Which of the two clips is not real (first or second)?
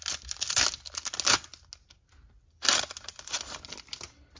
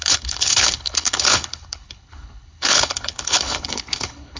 second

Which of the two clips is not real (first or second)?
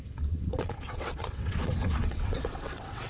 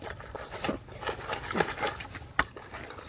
first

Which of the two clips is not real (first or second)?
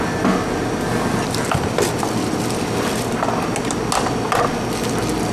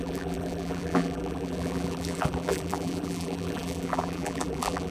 second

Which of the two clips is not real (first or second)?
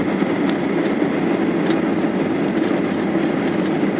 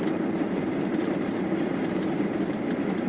second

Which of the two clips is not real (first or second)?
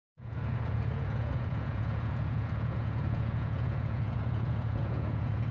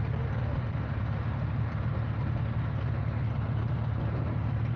first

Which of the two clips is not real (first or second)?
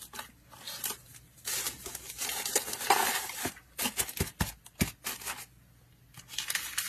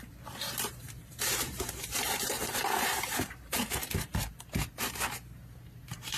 second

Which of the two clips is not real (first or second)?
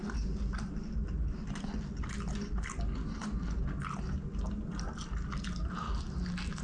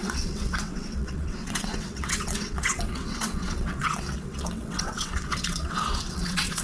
second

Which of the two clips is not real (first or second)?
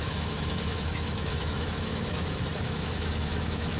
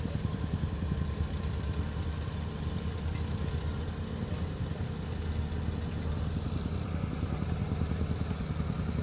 first